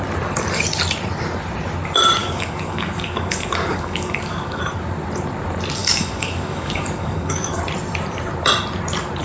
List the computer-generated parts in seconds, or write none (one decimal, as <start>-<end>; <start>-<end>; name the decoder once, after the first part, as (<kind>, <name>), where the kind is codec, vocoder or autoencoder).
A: 2.2-4.6 (codec, DAC); 5.8-7.6